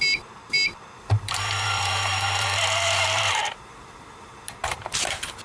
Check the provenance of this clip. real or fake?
fake